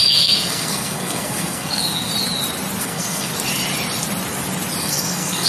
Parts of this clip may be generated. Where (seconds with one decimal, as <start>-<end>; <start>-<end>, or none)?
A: 0.0-2.1; 2.8-3.3; 4.8-5.5